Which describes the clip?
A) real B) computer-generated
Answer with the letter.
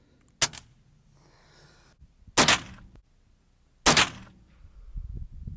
A